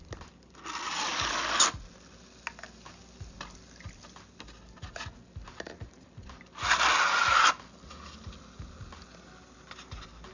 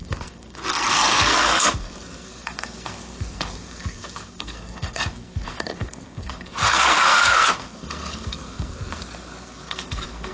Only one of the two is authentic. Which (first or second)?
first